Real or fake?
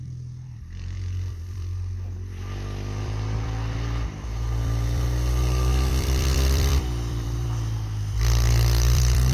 fake